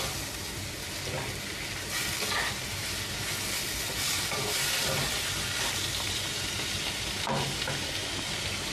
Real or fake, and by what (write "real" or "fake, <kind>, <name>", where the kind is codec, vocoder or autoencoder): real